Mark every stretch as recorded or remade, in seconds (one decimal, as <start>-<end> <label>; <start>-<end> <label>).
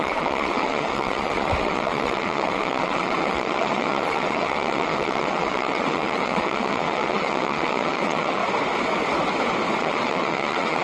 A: 0.0-8.4 remade; 8.4-9.8 recorded; 9.8-10.8 remade